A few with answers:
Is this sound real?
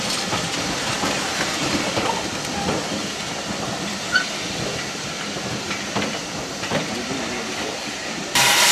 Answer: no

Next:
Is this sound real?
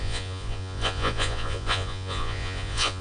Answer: no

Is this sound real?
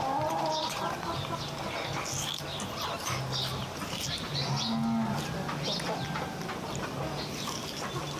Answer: yes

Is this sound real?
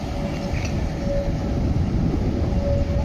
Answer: yes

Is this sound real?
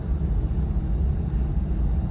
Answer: yes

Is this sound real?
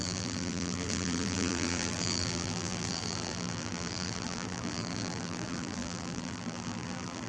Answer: no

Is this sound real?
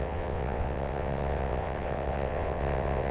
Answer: no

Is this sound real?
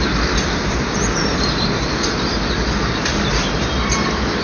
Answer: no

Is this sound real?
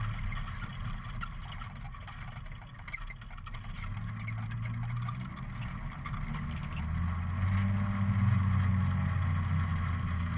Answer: yes